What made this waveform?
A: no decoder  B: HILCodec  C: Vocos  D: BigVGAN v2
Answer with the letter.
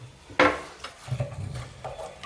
A